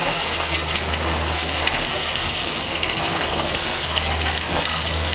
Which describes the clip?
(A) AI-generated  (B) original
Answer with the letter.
A